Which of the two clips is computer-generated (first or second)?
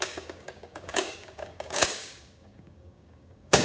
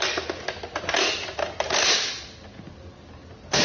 first